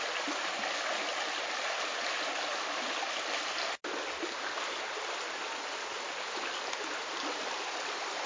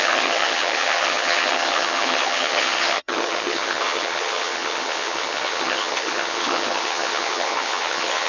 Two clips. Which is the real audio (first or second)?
first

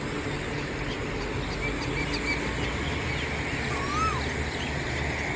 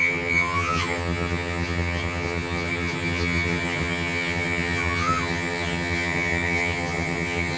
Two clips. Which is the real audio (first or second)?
first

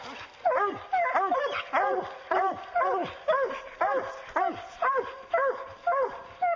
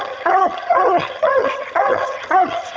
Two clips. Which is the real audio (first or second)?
first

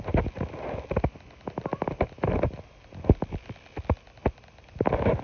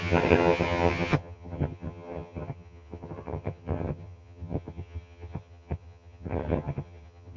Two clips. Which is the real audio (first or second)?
first